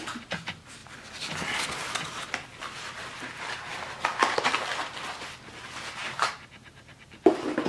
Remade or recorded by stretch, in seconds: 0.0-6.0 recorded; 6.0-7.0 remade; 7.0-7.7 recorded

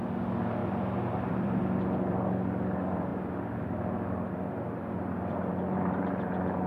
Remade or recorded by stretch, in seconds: 0.0-0.6 recorded; 0.6-1.6 remade; 1.6-5.5 recorded; 5.5-6.1 remade; 6.1-6.7 recorded

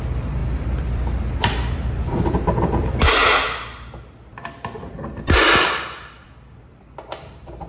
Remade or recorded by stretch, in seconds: 0.0-3.2 remade; 3.2-4.0 recorded; 4.0-7.7 remade

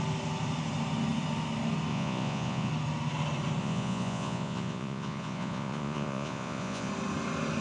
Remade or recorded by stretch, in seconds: 0.0-1.9 recorded; 1.9-2.7 remade; 2.7-3.6 recorded; 3.6-6.9 remade; 6.9-7.6 recorded

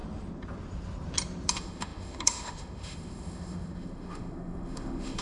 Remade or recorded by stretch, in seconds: 0.0-1.5 recorded; 1.5-5.2 remade

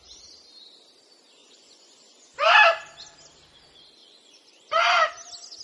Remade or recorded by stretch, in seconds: 0.0-1.4 recorded; 1.4-2.5 remade; 2.5-4.0 recorded; 4.0-5.1 remade; 5.1-5.6 recorded

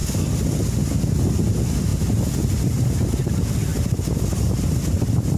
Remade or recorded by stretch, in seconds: 0.0-1.5 recorded; 1.5-5.4 remade